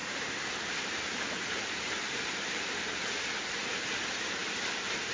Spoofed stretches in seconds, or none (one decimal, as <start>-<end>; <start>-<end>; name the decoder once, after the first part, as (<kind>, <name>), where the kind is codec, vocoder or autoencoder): 0.0-3.0 (vocoder, BigVGAN v2)